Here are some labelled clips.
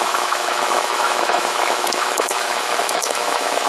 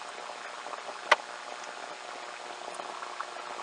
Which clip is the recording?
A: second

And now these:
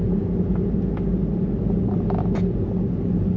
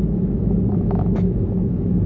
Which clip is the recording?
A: first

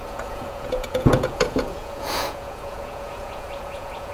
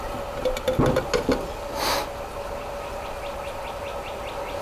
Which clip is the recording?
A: second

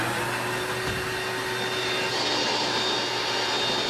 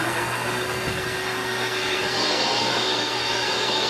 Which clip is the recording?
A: first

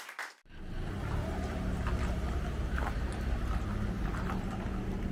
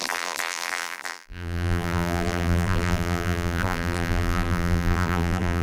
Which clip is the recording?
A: first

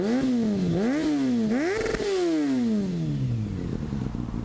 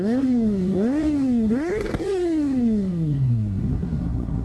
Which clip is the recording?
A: first